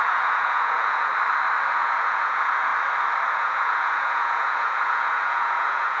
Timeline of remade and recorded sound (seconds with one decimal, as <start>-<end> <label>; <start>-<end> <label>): 0.0-1.1 remade; 1.1-1.7 recorded; 1.7-2.7 remade; 2.7-3.3 recorded; 3.3-6.0 remade